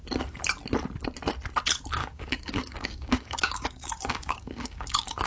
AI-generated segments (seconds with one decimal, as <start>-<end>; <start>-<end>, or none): 2.0-5.3